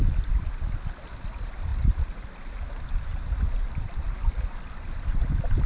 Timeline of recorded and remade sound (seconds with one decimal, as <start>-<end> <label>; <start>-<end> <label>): 0.0-5.7 recorded